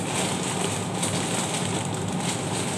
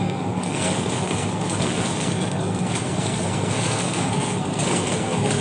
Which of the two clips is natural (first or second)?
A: first